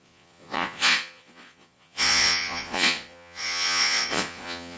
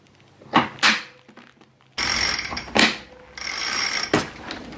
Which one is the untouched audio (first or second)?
second